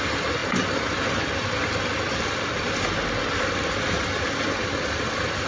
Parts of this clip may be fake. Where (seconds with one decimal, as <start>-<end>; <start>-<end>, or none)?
none